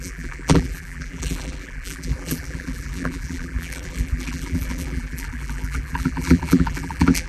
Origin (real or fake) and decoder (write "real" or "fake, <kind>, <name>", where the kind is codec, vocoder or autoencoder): fake, vocoder, BigVGAN v2